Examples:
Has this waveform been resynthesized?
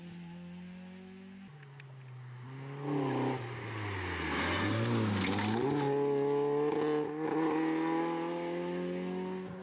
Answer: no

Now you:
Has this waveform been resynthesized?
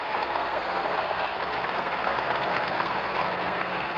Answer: yes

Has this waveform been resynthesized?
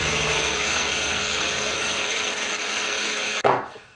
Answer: yes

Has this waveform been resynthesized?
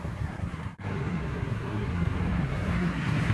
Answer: yes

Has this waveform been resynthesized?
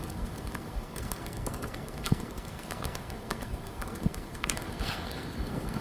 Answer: yes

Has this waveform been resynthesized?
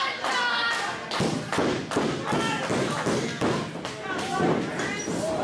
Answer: no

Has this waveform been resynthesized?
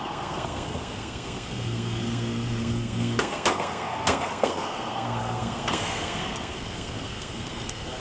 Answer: yes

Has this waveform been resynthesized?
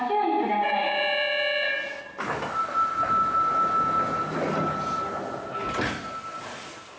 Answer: no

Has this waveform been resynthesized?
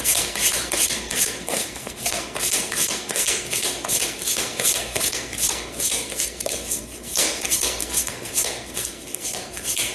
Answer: yes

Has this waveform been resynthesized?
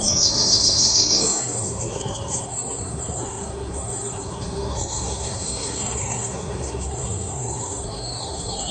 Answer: yes